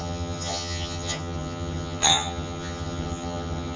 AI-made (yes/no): yes